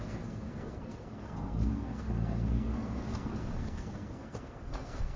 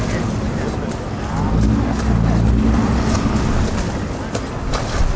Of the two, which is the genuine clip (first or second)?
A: second